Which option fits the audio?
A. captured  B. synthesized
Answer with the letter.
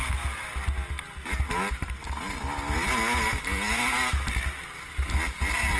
A